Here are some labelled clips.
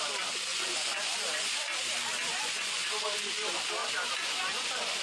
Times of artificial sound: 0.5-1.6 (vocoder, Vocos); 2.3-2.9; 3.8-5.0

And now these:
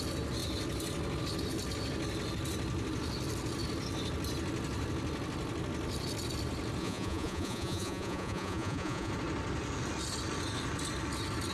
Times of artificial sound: 6.8-9.1 (vocoder, Vocos)